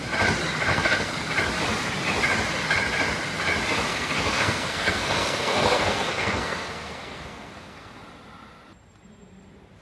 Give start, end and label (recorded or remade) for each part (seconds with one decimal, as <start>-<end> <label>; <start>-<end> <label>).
0.0-0.7 recorded; 0.7-1.3 remade; 1.3-3.9 recorded; 3.9-8.0 remade; 8.0-9.8 recorded